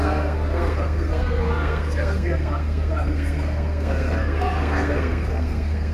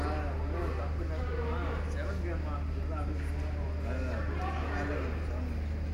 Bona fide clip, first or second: second